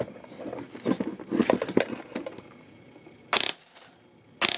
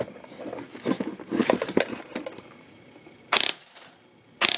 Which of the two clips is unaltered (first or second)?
first